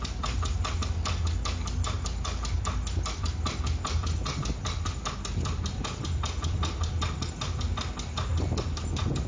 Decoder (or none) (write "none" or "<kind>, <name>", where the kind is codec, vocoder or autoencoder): none